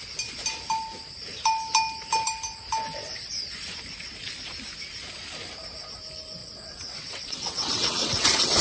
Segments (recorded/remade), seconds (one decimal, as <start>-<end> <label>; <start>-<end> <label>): 0.0-6.4 recorded; 6.4-8.6 remade